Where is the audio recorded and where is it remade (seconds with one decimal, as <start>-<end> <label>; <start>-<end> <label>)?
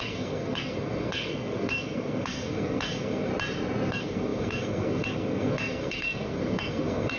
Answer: 0.0-3.3 remade; 3.3-3.9 recorded; 3.9-7.2 remade